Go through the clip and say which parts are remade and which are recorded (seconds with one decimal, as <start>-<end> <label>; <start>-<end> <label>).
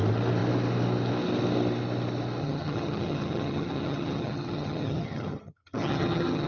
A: 0.0-2.4 recorded; 2.4-6.5 remade